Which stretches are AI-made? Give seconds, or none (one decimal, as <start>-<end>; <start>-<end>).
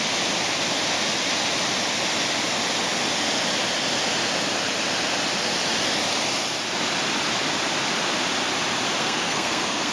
9.0-9.9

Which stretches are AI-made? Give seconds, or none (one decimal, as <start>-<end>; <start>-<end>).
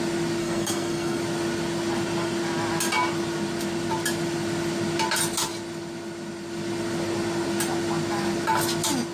0.4-1.2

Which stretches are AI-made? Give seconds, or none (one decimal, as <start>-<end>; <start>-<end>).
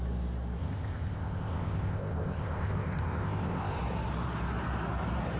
0.6-3.8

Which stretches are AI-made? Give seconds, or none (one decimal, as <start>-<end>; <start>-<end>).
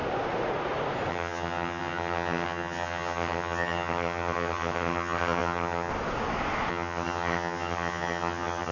1.1-5.9; 6.7-8.7